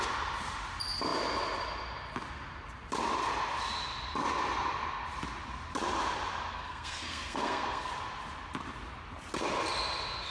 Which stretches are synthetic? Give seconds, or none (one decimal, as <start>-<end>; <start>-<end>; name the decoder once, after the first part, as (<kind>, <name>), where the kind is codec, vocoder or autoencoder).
6.5-7.9 (codec, SNAC)